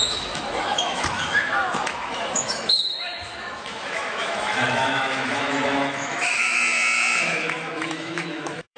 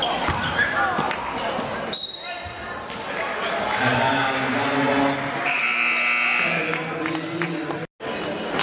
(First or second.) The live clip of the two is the second